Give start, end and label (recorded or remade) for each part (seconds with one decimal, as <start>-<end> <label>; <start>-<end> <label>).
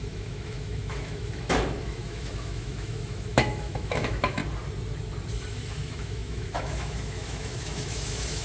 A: 0.0-4.4 remade; 4.4-5.5 recorded; 5.5-8.4 remade